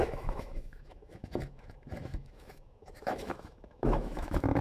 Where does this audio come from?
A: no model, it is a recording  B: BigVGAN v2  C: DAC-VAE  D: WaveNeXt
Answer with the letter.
C